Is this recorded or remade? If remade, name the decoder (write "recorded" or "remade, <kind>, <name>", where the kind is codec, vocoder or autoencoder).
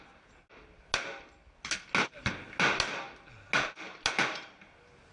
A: recorded